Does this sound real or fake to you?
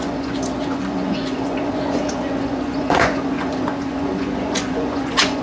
fake